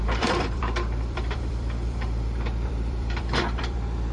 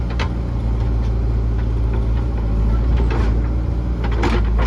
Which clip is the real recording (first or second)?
second